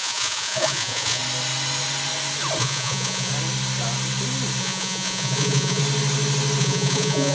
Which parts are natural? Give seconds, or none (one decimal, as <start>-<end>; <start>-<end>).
1.2-2.6; 3.3-4.6; 5.8-6.6